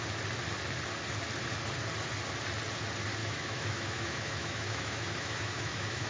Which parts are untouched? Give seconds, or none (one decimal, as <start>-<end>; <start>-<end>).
0.0-3.2